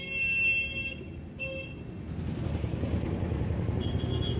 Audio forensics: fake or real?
real